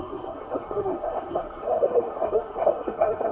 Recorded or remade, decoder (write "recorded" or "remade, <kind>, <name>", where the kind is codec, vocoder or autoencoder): remade, codec, SNAC